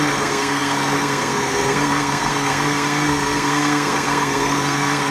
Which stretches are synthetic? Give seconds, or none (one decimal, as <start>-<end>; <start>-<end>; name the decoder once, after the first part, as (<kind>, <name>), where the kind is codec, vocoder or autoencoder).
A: 0.0-5.1 (codec, SNAC)